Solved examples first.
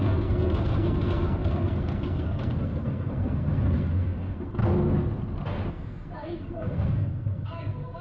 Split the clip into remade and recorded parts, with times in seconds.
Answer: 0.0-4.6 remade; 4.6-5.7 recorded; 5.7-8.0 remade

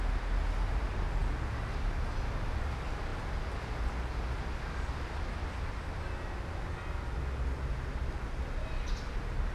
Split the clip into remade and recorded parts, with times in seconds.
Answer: 0.0-9.5 recorded

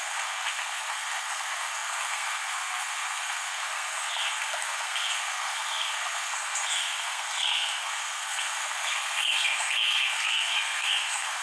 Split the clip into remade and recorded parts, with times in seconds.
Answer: 0.0-11.4 remade

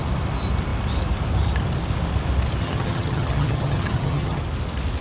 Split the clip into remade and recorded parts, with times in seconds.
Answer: 0.0-2.6 recorded; 2.6-4.4 remade; 4.4-5.0 recorded

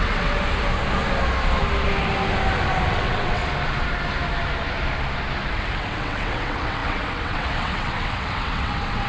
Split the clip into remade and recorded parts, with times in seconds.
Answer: 0.0-0.4 remade; 0.4-2.9 recorded; 2.9-3.4 remade; 3.4-5.5 recorded; 5.5-9.1 remade